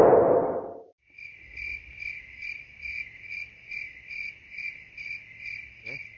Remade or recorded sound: recorded